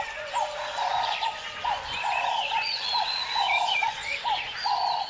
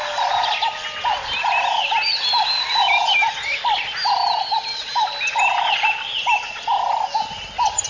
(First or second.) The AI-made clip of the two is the first